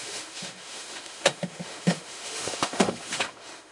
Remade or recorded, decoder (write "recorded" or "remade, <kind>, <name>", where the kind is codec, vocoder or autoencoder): remade, autoencoder, DAC-VAE